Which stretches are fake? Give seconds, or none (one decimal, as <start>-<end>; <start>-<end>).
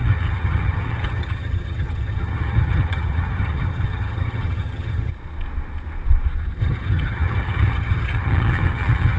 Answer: 0.0-5.1; 6.6-9.2